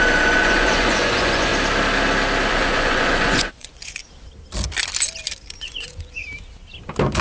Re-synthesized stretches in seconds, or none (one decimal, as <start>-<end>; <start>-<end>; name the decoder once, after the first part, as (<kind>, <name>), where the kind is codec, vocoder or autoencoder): 0.0-1.5 (vocoder, Vocos); 2.5-4.0; 5.6-6.2